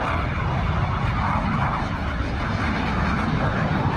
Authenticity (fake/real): real